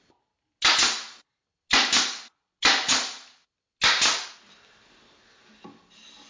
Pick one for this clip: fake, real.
real